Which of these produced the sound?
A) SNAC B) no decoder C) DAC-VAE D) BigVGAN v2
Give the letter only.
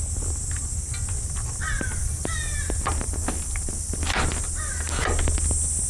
B